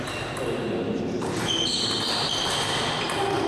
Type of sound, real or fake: real